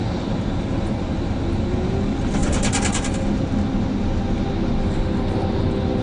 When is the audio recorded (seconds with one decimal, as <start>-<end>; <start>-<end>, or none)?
0.0-6.0